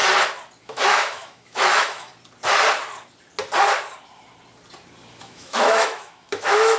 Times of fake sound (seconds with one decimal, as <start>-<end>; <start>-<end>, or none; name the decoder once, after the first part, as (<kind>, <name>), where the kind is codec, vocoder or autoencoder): 0.6-2.1 (autoencoder, DAC-VAE); 5.2-6.8